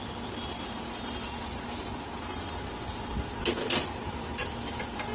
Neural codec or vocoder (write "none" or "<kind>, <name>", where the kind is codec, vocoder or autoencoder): none